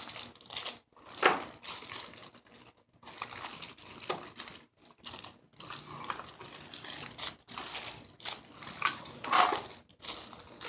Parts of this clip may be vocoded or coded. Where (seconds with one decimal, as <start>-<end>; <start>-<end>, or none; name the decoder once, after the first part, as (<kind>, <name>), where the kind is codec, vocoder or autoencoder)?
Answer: none